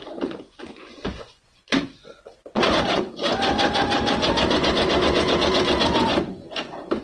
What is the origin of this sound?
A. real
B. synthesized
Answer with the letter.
B